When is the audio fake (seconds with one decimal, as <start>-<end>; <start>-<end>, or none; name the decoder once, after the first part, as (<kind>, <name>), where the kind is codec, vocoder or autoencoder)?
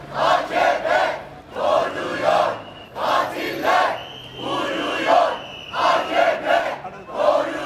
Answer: none